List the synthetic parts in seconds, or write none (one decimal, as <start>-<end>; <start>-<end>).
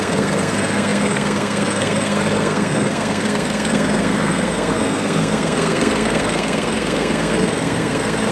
0.0-8.3